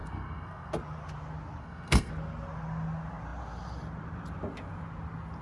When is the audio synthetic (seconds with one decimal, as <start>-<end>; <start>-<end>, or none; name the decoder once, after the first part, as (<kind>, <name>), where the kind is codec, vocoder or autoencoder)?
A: 0.0-0.7 (codec, SNAC); 1.6-2.1